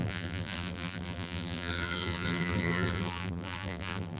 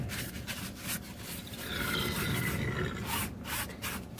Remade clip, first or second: first